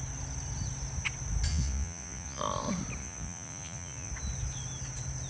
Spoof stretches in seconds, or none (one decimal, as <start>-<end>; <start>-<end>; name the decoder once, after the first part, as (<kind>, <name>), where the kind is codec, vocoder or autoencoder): 1.5-2.4 (vocoder, Vocos); 3.0-4.1